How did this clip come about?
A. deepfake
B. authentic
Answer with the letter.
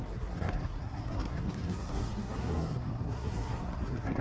A